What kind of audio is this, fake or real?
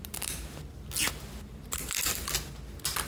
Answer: real